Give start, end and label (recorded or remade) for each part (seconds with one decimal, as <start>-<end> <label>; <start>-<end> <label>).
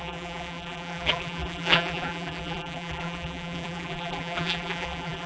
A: 0.0-5.3 remade